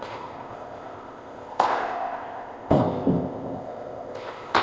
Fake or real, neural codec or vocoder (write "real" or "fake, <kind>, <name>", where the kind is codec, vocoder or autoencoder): fake, codec, ZipCodec